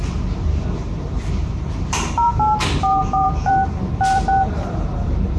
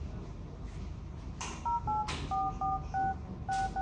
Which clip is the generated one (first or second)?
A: first